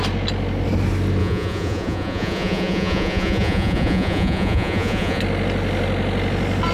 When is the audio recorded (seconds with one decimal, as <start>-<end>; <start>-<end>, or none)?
0.0-1.2; 5.2-6.7

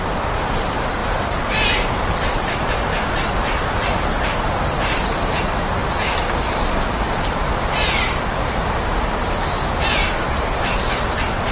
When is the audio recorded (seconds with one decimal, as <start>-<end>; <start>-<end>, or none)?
0.0-1.0; 5.4-11.5

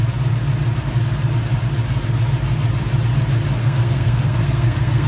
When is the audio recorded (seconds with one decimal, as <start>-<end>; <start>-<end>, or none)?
0.0-3.6

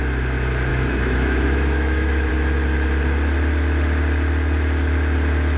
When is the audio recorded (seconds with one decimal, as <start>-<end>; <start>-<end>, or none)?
0.0-0.7; 2.3-5.6

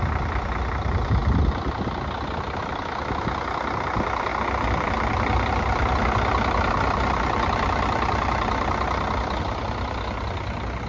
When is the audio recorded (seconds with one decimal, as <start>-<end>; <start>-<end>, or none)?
0.0-10.9

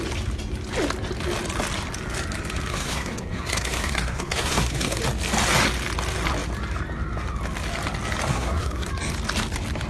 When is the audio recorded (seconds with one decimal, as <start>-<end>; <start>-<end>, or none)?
0.0-2.7; 5.0-8.3; 8.9-9.9